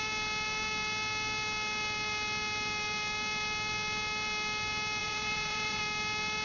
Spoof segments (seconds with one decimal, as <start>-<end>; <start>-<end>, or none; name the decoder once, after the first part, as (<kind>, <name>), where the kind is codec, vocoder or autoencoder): 5.0-5.8 (vocoder, Vocos)